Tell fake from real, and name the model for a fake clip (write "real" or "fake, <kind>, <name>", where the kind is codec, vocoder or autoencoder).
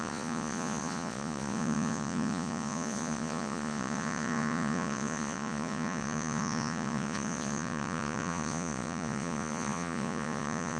fake, vocoder, Vocos